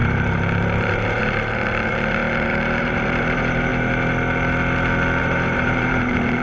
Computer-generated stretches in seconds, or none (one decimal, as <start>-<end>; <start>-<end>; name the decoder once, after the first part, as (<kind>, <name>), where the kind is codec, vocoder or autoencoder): 0.0-2.2 (vocoder, BigVGAN v2); 2.8-3.7; 5.2-6.4